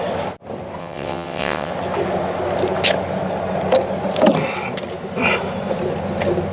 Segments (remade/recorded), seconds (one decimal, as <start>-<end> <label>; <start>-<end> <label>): 0.0-0.8 recorded; 0.8-1.7 remade; 1.7-6.5 recorded